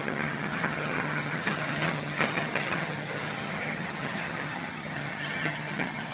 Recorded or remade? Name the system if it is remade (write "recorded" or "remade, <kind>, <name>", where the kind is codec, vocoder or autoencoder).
remade, vocoder, HiFi-GAN